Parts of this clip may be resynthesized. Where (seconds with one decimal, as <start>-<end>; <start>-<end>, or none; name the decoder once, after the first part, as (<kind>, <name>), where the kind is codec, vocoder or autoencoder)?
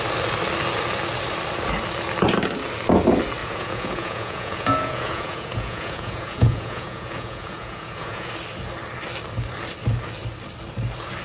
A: 3.4-8.3 (vocoder, Vocos)